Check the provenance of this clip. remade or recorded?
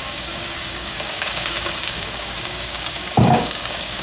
remade